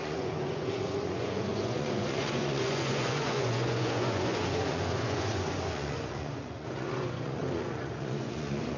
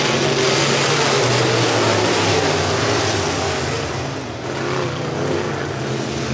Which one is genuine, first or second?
second